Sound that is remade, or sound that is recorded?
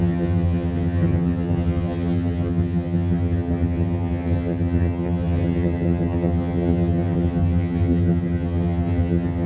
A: remade